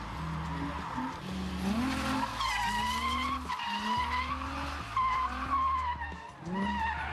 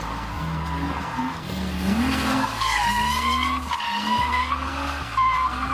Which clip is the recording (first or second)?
first